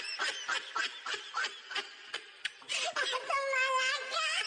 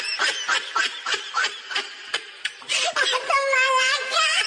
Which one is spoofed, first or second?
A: second